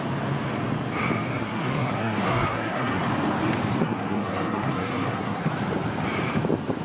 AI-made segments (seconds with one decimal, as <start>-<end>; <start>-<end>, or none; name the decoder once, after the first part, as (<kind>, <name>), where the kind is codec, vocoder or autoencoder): 1.3-3.0 (codec, SNAC); 3.8-5.5